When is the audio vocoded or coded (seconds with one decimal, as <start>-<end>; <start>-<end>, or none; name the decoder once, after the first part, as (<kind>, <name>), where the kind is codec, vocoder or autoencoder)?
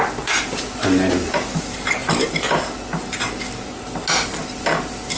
none